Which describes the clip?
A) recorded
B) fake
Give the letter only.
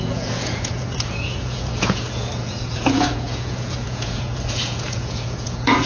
B